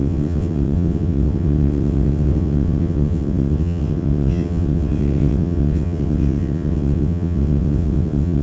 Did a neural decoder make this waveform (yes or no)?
yes